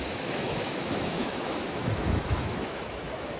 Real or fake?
fake